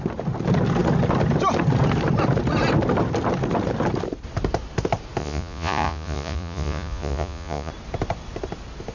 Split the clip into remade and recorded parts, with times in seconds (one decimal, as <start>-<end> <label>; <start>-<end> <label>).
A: 0.0-5.2 recorded; 5.2-7.7 remade; 7.7-8.9 recorded